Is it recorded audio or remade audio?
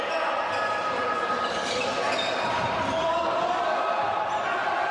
recorded